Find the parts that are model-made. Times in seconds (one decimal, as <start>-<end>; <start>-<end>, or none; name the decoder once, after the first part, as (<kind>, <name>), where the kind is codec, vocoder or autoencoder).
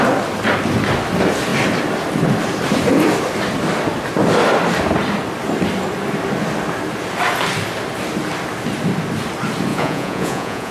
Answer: 9.7-10.7 (vocoder, Vocos)